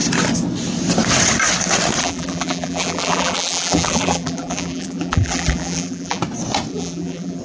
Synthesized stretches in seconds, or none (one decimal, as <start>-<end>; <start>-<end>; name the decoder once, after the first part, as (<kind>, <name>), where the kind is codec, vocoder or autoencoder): 2.0-6.2 (vocoder, BigVGAN v2); 6.7-7.4